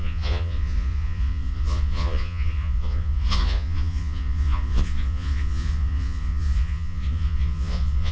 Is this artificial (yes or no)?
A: yes